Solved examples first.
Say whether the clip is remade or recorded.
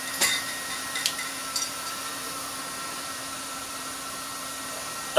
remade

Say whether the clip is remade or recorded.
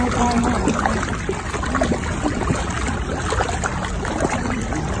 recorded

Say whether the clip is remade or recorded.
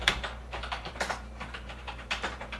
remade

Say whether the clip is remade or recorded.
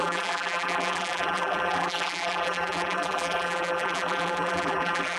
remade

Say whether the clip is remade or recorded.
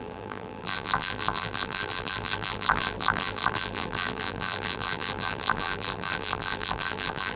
remade